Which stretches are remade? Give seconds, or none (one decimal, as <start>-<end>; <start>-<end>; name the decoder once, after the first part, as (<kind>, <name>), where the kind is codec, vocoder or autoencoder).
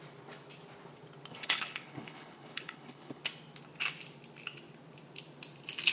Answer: 1.3-3.2 (codec, HILCodec)